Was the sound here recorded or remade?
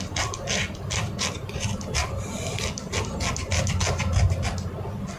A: recorded